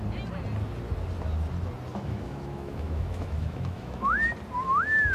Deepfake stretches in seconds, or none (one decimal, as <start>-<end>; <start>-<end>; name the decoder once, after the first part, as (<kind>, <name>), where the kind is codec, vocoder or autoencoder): 1.9-4.1 (autoencoder, DAC-VAE)